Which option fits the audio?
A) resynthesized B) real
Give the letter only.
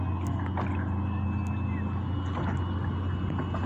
B